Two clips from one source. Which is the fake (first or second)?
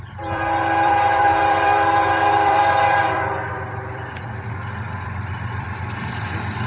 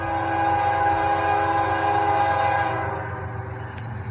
first